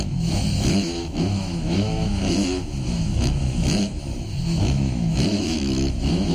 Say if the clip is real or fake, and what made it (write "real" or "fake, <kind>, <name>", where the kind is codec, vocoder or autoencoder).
fake, autoencoder, DAC-VAE